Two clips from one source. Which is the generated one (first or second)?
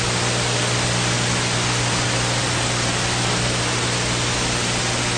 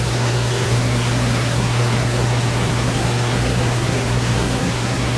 second